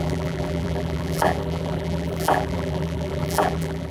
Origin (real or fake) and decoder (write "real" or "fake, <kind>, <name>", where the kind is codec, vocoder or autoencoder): fake, vocoder, BigVGAN v2